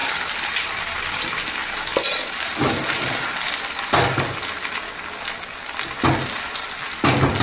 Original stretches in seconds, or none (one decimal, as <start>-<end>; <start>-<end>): 0.0-7.4